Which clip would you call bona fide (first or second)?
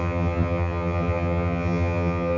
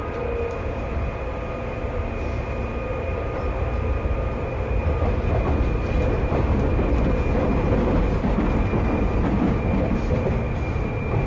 second